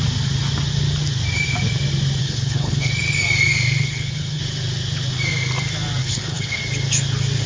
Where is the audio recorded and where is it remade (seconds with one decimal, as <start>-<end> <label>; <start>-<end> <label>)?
0.0-2.2 recorded; 2.2-2.9 remade; 2.9-3.8 recorded; 3.8-4.4 remade; 4.4-6.0 recorded; 6.0-6.6 remade; 6.6-7.5 recorded